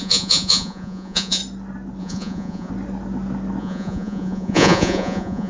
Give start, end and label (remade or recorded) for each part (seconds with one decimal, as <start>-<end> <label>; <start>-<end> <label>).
0.0-1.4 remade; 1.4-2.0 recorded; 2.0-2.7 remade; 2.7-3.6 recorded; 3.6-5.5 remade